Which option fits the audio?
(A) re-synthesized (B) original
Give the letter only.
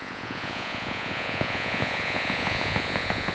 A